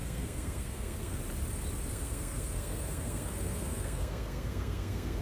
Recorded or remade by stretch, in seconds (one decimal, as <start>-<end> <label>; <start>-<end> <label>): 0.0-1.2 remade; 1.2-1.9 recorded; 1.9-5.2 remade